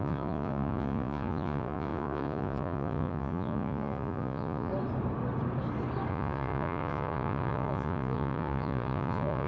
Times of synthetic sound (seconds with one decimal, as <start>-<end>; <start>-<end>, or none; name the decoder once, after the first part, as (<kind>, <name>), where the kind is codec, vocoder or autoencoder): 0.0-4.7 (vocoder, Vocos); 6.1-9.5